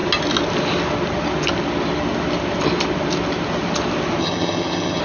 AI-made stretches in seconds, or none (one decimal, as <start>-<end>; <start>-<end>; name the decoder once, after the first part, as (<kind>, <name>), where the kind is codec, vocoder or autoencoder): 4.2-5.0 (vocoder, HiFi-GAN)